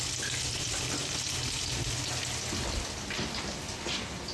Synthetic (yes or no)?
no